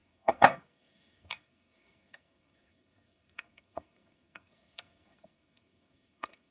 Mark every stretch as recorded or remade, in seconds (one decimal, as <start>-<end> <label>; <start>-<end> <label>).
0.0-6.5 remade